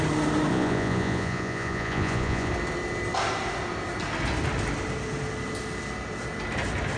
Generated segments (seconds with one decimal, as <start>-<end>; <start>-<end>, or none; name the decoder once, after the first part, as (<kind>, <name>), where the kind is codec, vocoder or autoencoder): 0.5-2.5 (vocoder, Vocos)